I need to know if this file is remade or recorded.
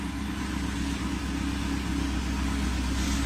recorded